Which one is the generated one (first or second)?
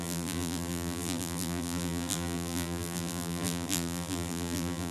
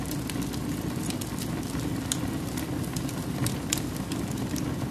first